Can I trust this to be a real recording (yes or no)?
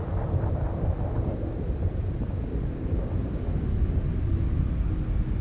yes